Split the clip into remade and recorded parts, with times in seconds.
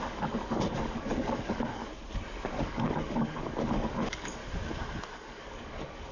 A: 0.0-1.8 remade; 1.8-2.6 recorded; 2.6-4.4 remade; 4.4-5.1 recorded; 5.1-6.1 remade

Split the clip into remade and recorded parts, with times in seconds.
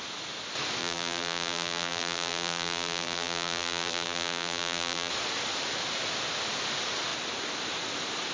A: 0.0-0.8 recorded; 0.8-5.1 remade; 5.1-8.3 recorded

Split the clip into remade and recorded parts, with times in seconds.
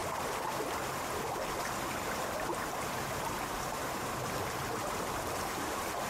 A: 0.0-1.6 recorded; 1.6-6.1 remade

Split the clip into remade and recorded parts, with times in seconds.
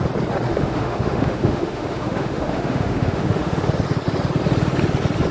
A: 0.0-0.5 recorded; 0.5-3.7 remade; 3.7-5.3 recorded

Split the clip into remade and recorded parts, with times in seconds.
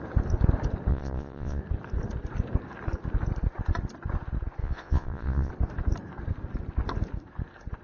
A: 0.0-0.9 recorded; 0.9-1.6 remade; 1.6-4.6 recorded; 4.6-5.5 remade; 5.5-7.8 recorded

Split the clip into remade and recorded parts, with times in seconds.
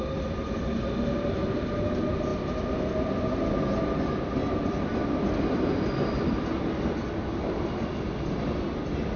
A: 0.0-9.2 recorded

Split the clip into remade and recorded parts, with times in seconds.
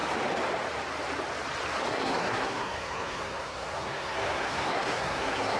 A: 0.0-1.9 recorded; 1.9-5.6 remade